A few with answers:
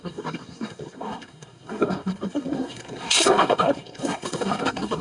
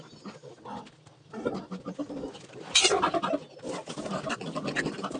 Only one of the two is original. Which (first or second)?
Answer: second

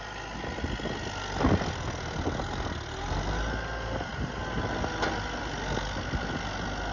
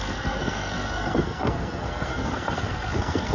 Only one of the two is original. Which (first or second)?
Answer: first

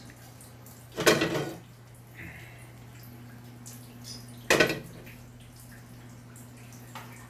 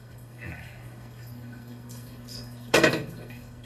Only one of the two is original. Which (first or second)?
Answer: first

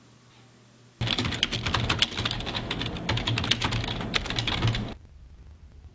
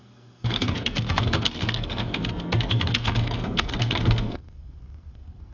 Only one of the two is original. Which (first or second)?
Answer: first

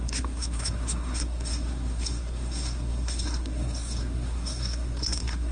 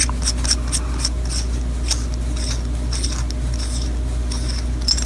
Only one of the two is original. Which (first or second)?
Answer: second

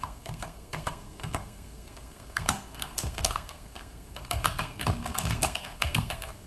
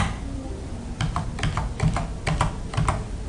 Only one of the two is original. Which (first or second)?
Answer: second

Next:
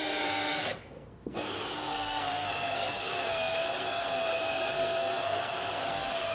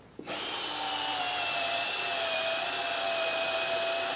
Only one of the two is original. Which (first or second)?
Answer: second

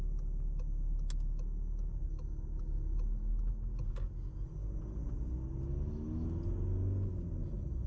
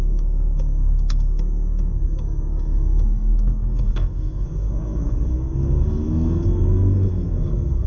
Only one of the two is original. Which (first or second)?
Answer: first